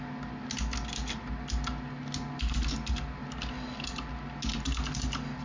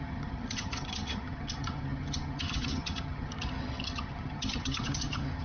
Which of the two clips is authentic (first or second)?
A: first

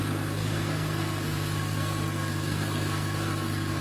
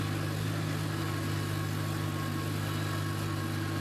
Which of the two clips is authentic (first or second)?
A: second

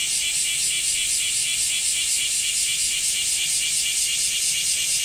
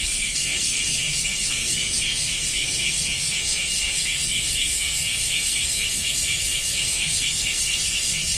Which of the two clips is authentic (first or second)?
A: first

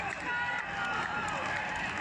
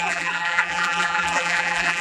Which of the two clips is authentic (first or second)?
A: first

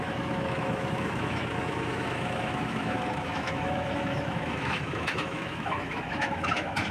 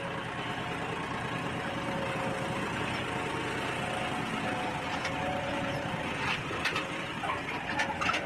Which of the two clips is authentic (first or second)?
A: second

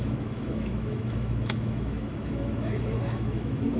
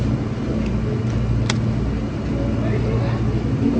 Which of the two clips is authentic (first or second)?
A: second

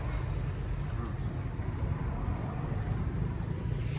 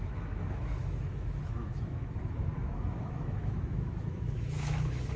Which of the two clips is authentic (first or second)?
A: first